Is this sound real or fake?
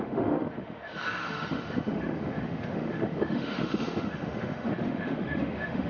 fake